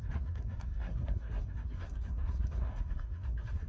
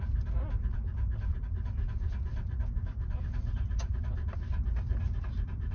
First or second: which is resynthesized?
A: first